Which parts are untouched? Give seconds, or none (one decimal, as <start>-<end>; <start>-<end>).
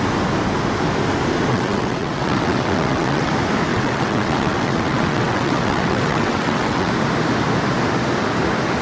0.0-1.5; 3.3-3.7; 6.9-8.8